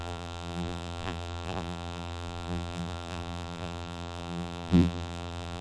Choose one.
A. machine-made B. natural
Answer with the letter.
A